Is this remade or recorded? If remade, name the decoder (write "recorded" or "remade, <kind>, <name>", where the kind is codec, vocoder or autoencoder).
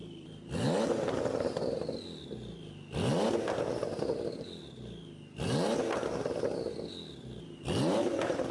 recorded